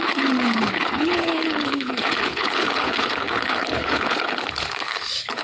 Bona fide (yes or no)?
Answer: no